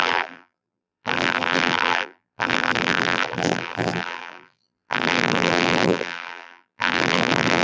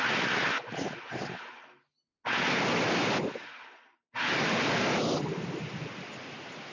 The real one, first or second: second